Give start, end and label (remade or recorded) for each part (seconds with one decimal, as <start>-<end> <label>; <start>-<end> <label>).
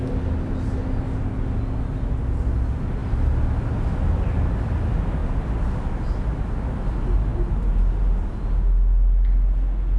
0.0-10.0 recorded